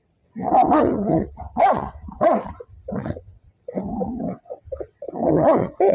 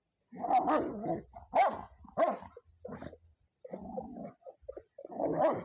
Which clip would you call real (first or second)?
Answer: second